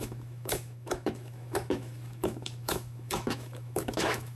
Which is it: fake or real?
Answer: fake